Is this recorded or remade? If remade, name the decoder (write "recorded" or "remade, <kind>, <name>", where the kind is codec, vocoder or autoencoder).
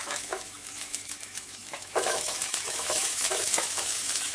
remade, autoencoder, DAC-VAE